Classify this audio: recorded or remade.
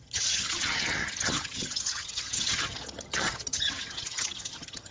remade